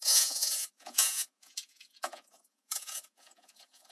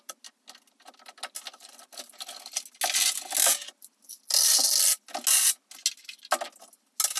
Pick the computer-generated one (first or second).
first